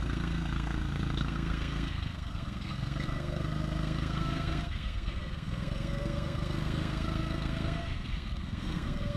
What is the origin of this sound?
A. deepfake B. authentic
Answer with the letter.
A